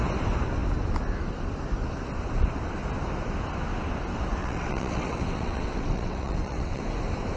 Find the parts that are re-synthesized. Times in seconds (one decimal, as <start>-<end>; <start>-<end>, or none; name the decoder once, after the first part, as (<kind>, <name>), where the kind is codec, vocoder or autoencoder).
4.4-6.8 (vocoder, WaveNeXt)